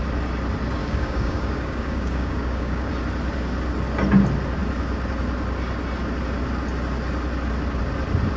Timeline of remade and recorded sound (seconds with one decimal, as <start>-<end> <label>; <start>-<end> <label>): 0.0-0.8 recorded; 0.8-2.9 remade; 2.9-8.4 recorded